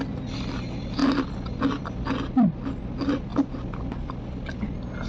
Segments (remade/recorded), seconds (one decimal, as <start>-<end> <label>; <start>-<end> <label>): 0.0-5.1 recorded

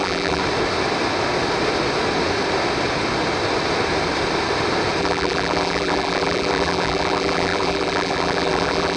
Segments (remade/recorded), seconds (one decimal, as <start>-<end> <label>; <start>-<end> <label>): 0.0-0.4 remade; 0.4-5.0 recorded; 5.0-9.0 remade

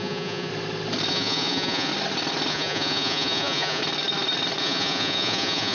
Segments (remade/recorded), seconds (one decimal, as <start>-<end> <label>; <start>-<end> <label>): 0.0-0.5 remade; 0.5-1.1 recorded; 1.1-1.9 remade; 1.9-2.5 recorded; 2.5-3.8 remade; 3.8-4.6 recorded; 4.6-5.7 remade

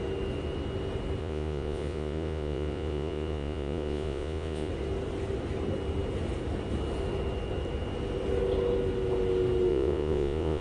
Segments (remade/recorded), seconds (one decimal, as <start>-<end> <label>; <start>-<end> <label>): 0.0-1.2 recorded; 1.2-4.7 remade; 4.7-9.7 recorded; 9.7-10.6 remade

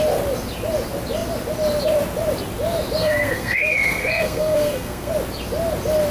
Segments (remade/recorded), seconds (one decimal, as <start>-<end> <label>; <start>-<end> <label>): 0.0-3.0 recorded; 3.0-5.1 remade; 5.1-6.1 recorded